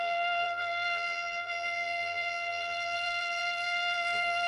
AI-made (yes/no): yes